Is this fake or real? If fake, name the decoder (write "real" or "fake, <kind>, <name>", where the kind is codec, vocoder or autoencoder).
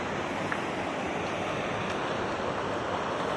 real